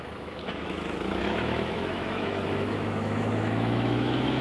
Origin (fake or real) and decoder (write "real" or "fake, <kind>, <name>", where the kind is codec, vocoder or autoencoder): fake, autoencoder, DAC-VAE